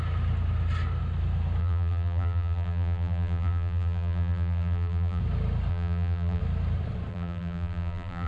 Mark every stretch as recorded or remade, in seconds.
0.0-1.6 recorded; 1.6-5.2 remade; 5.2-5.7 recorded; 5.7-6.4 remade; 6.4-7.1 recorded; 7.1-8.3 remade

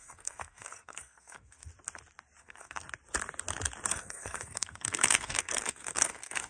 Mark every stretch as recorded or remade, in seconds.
0.0-1.7 remade; 1.7-2.4 recorded; 2.4-2.8 remade; 2.8-3.9 recorded; 3.9-6.5 remade

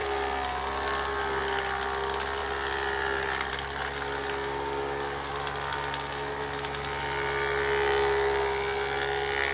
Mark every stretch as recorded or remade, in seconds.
0.0-9.5 recorded

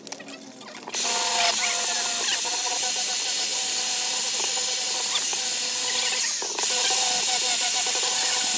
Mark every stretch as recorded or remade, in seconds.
0.0-8.6 recorded